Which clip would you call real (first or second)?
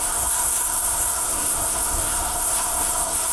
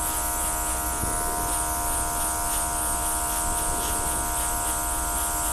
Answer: second